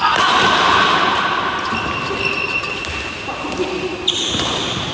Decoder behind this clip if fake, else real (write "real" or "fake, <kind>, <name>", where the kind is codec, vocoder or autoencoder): real